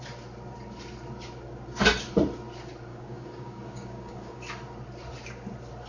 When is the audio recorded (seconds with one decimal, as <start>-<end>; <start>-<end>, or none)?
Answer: 0.0-2.9; 4.4-5.9